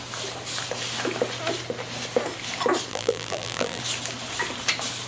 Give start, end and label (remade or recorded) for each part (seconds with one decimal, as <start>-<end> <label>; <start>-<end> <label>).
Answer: 0.0-2.9 recorded; 2.9-3.8 remade; 3.8-5.1 recorded